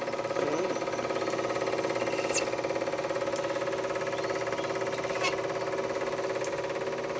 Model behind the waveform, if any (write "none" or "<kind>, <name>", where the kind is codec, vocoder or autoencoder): none